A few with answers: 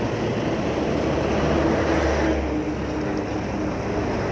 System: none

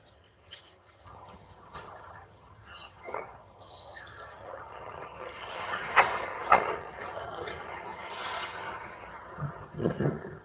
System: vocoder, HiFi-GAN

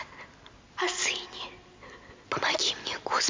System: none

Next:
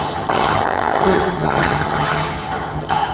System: vocoder, HiFi-GAN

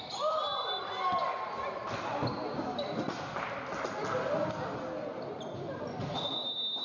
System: none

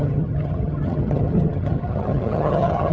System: vocoder, HiFi-GAN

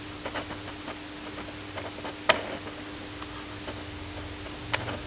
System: none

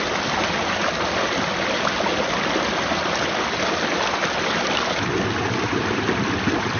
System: none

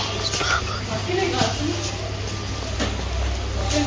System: none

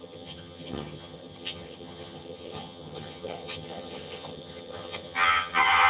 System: vocoder, HiFi-GAN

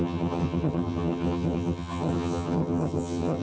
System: vocoder, HiFi-GAN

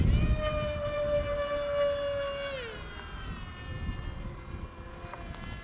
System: none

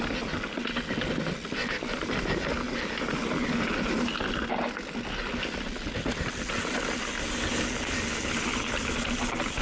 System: none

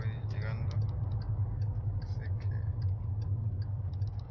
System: none